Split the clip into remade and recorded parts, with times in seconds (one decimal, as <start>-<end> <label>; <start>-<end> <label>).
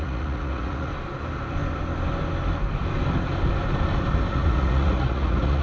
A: 0.0-0.9 remade; 0.9-4.3 recorded; 4.3-5.6 remade